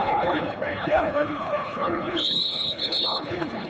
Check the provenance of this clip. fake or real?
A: fake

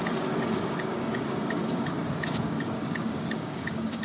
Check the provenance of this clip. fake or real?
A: fake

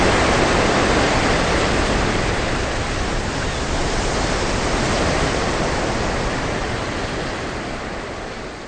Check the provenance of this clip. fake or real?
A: real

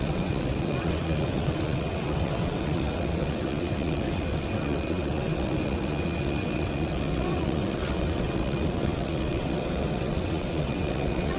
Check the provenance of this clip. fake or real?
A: fake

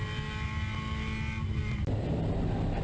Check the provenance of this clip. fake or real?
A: real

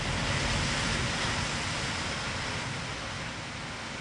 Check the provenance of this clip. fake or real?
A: real